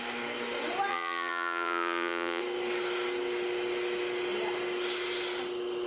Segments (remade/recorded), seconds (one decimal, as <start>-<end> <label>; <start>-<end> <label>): 0.0-0.9 recorded; 0.9-2.4 remade; 2.4-5.9 recorded